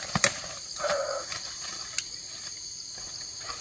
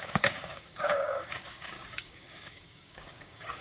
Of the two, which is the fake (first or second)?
second